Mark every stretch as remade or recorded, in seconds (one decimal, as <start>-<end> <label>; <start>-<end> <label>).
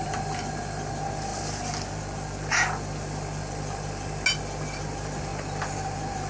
0.0-6.3 recorded